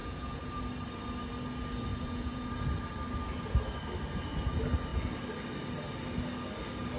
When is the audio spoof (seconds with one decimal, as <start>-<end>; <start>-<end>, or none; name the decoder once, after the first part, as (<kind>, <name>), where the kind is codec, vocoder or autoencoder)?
0.0-0.6 (vocoder, Vocos); 1.9-2.5